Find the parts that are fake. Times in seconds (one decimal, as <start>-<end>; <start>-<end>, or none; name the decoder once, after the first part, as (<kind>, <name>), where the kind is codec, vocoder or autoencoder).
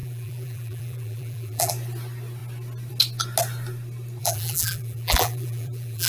0.0-1.7 (vocoder, BigVGAN v2); 4.2-6.1